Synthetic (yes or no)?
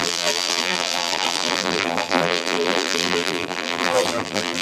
yes